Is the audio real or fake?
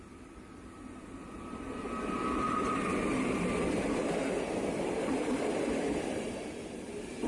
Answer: fake